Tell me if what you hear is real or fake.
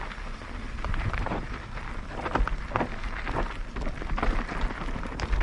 real